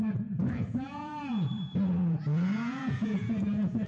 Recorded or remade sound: remade